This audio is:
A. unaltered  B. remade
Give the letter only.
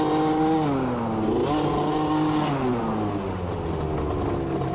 A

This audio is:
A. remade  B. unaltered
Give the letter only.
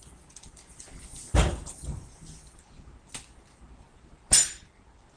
B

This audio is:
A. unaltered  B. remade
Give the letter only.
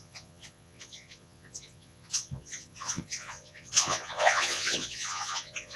B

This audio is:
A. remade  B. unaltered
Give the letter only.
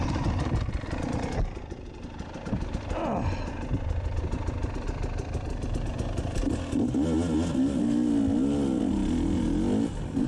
B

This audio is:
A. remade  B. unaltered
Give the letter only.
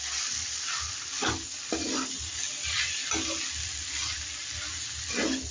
B